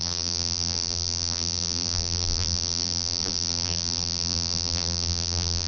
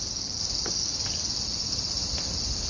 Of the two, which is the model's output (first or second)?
first